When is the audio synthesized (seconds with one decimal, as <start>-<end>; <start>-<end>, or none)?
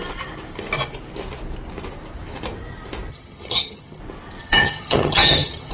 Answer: 3.1-4.0; 4.4-5.7